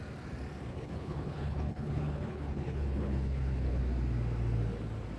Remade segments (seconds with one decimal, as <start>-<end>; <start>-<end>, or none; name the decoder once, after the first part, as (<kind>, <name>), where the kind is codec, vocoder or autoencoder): 0.7-3.8 (codec, HILCodec)